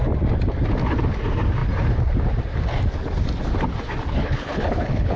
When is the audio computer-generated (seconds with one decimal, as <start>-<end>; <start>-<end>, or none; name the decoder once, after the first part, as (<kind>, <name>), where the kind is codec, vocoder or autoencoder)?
4.2-5.2 (codec, HILCodec)